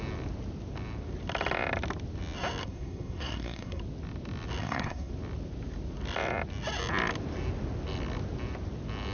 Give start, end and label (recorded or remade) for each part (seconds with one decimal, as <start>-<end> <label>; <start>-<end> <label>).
0.0-2.6 recorded; 2.6-3.8 remade; 3.8-4.6 recorded; 4.6-5.1 remade; 5.1-9.1 recorded